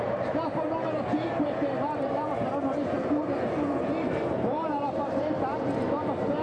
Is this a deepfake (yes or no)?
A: yes